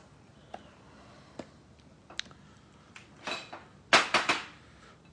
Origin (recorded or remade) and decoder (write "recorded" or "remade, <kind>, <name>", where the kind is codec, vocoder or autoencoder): recorded